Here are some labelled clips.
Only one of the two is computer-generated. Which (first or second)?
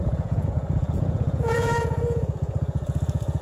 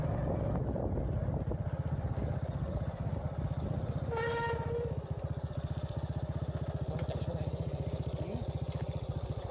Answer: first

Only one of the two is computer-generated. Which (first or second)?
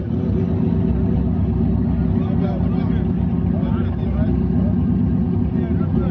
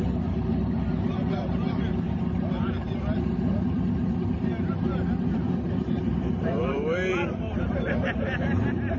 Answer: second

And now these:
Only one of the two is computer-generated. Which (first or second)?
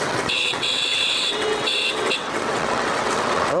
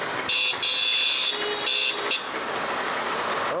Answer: first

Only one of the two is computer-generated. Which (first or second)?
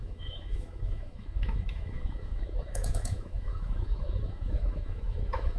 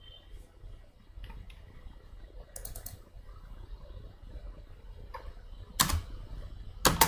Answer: first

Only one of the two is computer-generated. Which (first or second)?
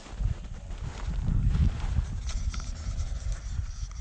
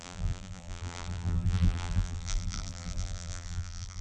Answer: second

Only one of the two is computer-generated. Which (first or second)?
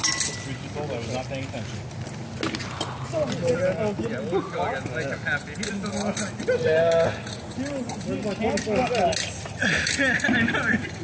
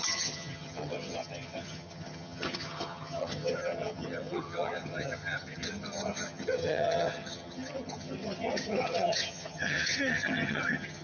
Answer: second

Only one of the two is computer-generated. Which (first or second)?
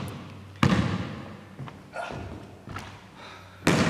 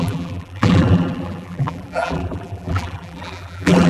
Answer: second